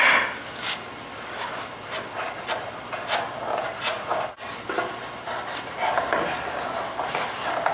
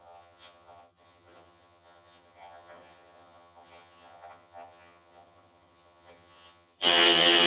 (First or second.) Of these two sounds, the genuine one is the first